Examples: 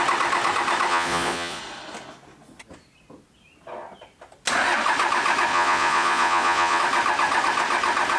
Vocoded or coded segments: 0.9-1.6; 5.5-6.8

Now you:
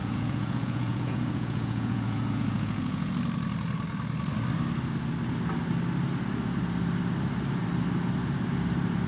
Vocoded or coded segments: 0.0-3.1

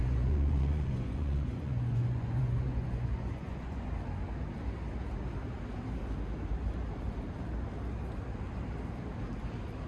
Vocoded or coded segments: 0.0-3.9

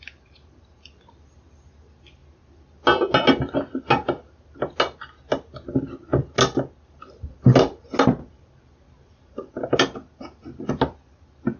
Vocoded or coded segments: none

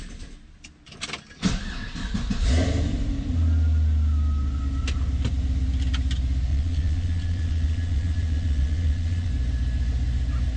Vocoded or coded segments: 6.5-9.3

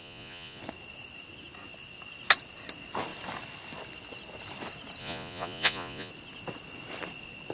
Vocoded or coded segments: 0.0-0.6; 5.0-6.1

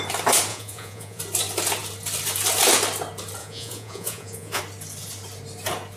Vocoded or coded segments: 0.5-1.2; 3.4-4.6

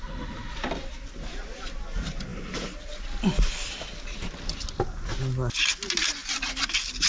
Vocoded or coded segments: none